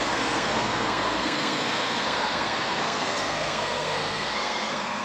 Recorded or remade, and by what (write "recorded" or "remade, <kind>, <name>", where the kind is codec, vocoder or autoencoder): remade, codec, SNAC